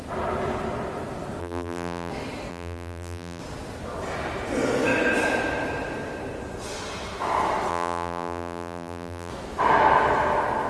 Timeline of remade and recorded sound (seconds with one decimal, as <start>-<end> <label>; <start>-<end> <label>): 0.0-1.4 recorded; 1.4-2.1 remade; 2.1-2.5 recorded; 2.5-3.4 remade; 3.4-7.7 recorded; 7.7-9.3 remade; 9.3-10.7 recorded